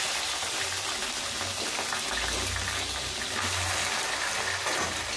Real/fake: real